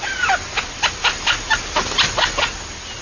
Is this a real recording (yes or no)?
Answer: yes